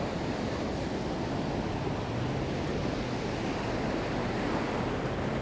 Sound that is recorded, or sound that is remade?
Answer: recorded